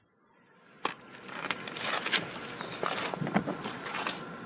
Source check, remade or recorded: recorded